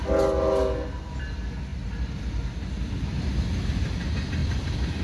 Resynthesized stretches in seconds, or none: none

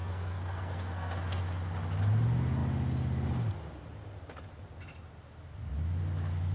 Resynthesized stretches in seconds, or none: 0.0-1.4

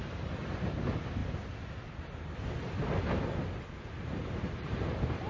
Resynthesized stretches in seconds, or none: 0.0-1.2; 4.0-5.3

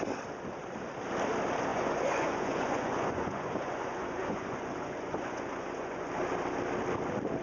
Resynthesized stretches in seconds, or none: 1.7-6.1

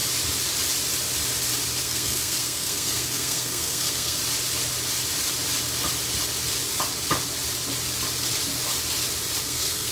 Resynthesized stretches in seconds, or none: 1.8-4.2; 9.4-9.9

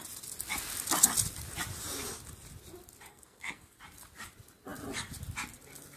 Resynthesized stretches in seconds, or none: 3.1-3.8